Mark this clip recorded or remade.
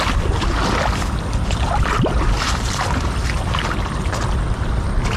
recorded